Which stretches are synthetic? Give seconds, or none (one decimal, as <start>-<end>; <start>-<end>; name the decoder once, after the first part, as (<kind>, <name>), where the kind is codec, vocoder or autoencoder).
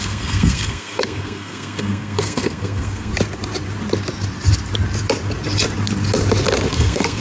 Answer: 0.0-3.1 (codec, SNAC); 6.7-7.2